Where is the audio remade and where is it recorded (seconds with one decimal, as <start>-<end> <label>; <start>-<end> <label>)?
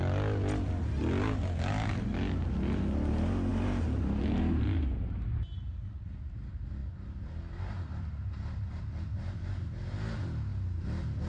0.0-11.3 recorded